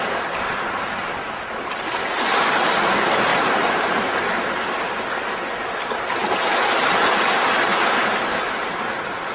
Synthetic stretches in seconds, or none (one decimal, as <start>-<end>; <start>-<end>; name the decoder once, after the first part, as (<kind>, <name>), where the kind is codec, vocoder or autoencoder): 3.3-4.0 (vocoder, BigVGAN v2)